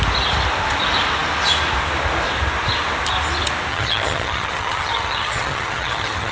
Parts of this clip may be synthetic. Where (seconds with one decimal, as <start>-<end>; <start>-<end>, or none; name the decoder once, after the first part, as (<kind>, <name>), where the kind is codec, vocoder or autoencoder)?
3.7-6.3 (vocoder, HiFi-GAN)